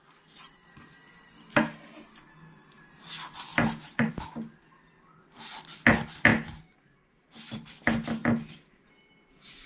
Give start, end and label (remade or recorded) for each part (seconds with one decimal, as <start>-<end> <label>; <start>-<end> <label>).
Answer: 0.0-3.5 recorded; 3.5-4.1 remade; 4.1-6.3 recorded; 6.3-7.7 remade; 7.7-8.2 recorded; 8.2-8.9 remade; 8.9-9.7 recorded